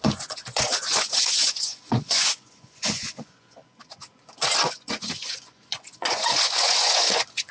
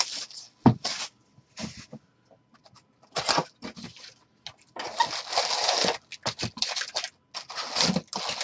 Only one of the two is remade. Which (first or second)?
first